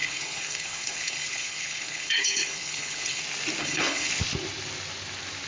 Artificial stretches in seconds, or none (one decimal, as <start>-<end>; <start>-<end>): 0.0-3.2; 3.6-4.1